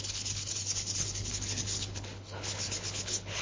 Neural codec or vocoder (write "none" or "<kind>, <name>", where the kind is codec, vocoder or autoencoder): codec, HILCodec